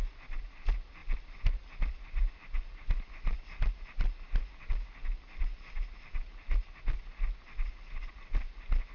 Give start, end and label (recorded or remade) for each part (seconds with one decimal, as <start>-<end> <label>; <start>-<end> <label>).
0.0-8.9 recorded